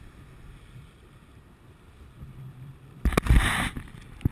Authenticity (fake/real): real